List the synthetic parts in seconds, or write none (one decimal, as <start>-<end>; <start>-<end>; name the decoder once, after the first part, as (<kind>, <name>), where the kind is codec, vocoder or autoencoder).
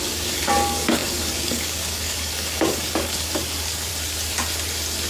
0.0-3.9 (codec, DAC)